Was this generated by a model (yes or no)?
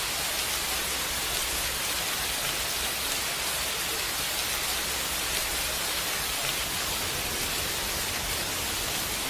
no